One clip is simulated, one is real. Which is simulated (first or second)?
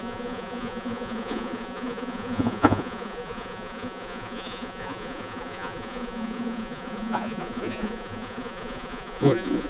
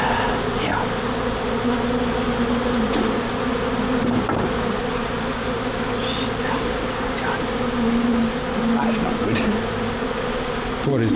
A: first